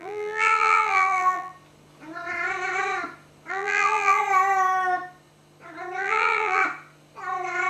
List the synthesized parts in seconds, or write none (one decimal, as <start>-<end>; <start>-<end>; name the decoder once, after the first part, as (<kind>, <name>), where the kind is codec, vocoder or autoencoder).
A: 0.0-1.5 (vocoder, BigVGAN v2); 3.5-4.2; 6.0-6.6